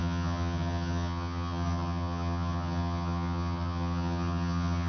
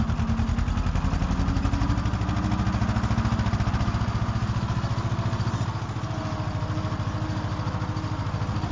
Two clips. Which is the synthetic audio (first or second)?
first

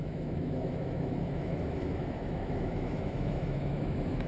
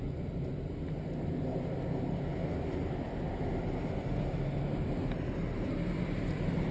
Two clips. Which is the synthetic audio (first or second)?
first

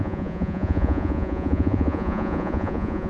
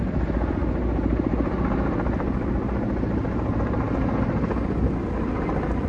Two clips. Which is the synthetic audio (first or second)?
first